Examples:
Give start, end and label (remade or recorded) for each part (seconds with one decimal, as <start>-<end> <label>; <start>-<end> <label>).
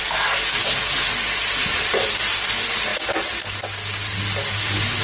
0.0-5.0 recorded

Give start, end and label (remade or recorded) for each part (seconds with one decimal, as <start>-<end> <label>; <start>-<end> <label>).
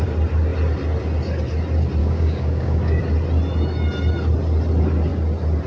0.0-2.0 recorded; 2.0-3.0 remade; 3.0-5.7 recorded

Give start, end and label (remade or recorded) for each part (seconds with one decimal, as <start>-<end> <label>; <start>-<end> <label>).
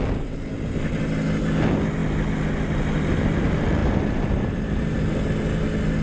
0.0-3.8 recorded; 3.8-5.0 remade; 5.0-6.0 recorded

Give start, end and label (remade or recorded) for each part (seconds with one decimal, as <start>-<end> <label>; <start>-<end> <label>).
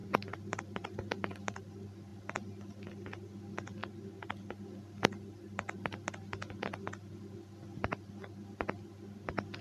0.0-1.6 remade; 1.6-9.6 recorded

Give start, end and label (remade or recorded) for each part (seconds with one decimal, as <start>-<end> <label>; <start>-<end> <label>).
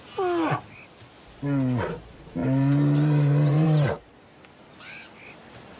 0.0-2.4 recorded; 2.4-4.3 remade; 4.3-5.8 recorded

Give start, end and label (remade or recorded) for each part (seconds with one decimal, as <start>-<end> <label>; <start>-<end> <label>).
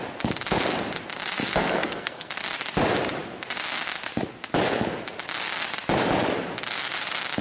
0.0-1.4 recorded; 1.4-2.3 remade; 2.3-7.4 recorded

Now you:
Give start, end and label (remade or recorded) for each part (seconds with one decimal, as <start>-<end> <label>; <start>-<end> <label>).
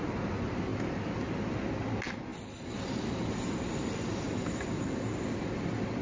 0.0-6.0 recorded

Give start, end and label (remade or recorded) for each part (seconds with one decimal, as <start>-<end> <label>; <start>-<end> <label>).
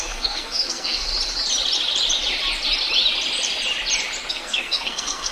0.0-1.1 remade; 1.1-4.3 recorded; 4.3-5.3 remade